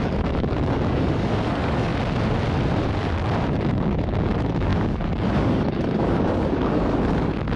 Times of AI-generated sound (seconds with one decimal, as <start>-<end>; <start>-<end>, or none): 0.0-1.9; 3.5-7.6